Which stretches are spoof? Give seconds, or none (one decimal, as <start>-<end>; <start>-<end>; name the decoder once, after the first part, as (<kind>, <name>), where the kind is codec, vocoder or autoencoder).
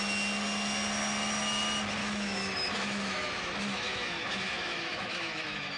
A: 2.0-5.8 (autoencoder, DAC-VAE)